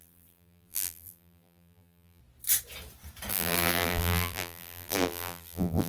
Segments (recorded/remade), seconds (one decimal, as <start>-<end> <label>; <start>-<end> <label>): 0.0-2.2 remade; 2.2-3.3 recorded; 3.3-5.9 remade